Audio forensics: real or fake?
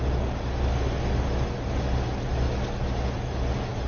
real